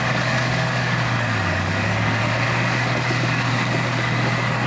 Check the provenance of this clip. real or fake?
fake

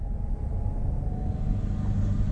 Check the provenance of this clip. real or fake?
real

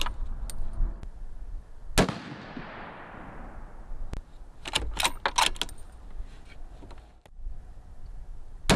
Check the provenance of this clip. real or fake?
real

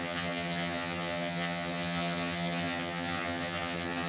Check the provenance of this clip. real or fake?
fake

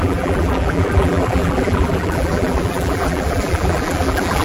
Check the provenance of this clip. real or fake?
fake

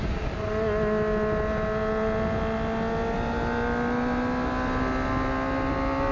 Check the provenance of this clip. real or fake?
real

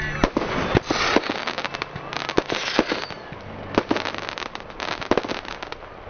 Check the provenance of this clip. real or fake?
real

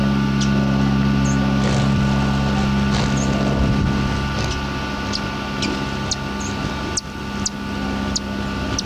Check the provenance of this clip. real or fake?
real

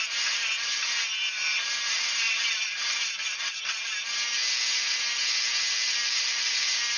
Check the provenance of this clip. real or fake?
real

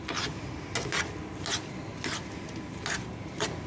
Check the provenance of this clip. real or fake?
real